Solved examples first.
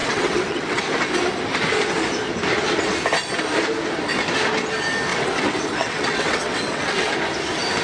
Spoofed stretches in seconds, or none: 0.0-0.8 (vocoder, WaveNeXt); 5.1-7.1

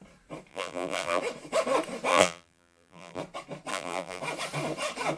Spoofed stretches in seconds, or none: 0.5-1.2 (vocoder, BigVGAN v2); 2.1-3.2; 3.7-4.2

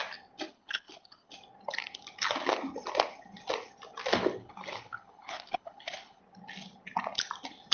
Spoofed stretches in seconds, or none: 0.5-1.3 (codec, HILCodec); 4.4-6.2

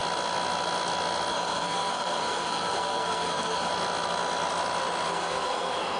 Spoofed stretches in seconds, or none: 1.3-3.7 (codec, SNAC); 5.1-6.0

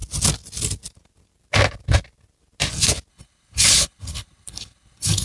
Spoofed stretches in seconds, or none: 3.1-5.2 (codec, HILCodec)

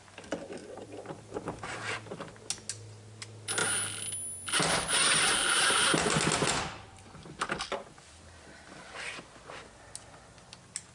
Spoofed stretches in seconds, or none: 0.6-2.3 (vocoder, BigVGAN v2)

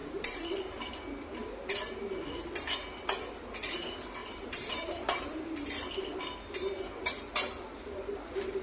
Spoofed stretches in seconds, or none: 0.0-1.0 (vocoder, BigVGAN v2); 4.2-6.2

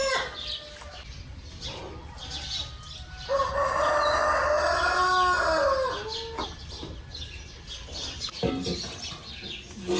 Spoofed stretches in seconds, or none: none